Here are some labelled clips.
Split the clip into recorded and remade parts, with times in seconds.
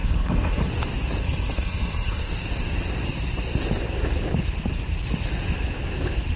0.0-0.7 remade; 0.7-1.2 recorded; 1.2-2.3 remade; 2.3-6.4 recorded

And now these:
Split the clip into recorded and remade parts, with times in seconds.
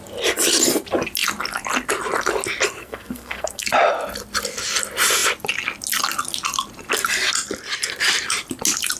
0.0-2.8 recorded; 2.8-3.7 remade; 3.7-9.0 recorded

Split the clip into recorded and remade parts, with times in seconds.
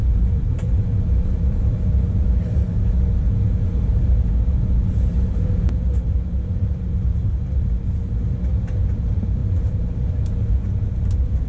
0.0-7.2 remade; 7.2-8.5 recorded; 8.5-11.5 remade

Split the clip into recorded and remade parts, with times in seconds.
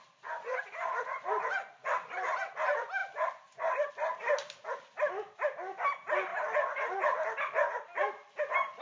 0.0-8.8 recorded